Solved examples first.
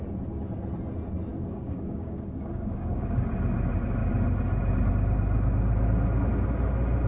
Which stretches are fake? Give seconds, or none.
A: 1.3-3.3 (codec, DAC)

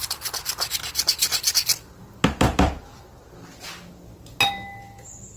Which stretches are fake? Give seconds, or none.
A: none

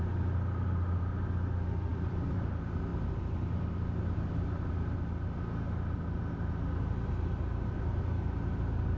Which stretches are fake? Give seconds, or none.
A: 1.9-2.5 (vocoder, BigVGAN v2)

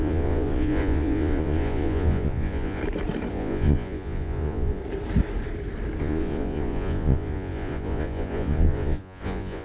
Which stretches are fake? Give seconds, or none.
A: 0.0-2.8 (vocoder, Vocos); 3.3-4.8; 6.0-9.6

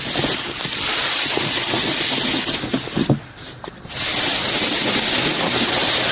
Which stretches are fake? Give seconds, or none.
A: none

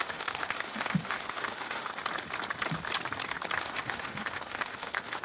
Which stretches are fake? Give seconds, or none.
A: 0.0-1.9 (autoencoder, DAC-VAE); 3.6-5.2

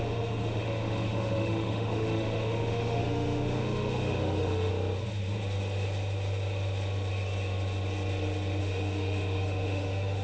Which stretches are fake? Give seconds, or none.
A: 0.0-4.7 (autoencoder, DAC-VAE); 8.6-10.2

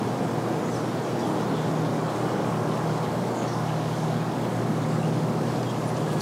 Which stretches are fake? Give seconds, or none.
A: 1.9-5.6 (codec, DAC)